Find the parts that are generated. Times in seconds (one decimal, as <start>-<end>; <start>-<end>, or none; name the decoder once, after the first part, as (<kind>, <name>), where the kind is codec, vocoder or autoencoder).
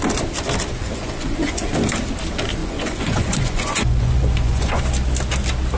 0.8-1.7 (vocoder, Vocos); 2.6-4.8